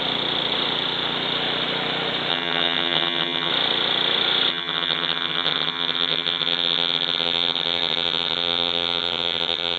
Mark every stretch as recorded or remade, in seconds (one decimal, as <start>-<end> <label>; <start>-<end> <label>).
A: 0.0-2.3 recorded; 2.3-3.5 remade; 3.5-4.5 recorded; 4.5-9.8 remade